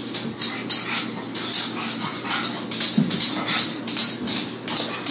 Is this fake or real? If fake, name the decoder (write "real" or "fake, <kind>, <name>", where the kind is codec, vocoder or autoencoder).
real